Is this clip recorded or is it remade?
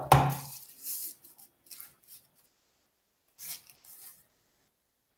recorded